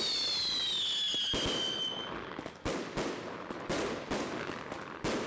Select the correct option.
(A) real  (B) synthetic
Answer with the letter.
A